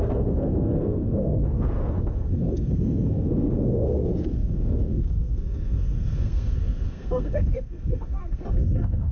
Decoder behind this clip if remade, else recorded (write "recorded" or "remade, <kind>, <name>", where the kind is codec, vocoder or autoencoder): remade, codec, SNAC